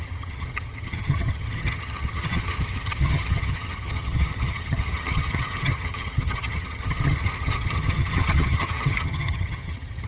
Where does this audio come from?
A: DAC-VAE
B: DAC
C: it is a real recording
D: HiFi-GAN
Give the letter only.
D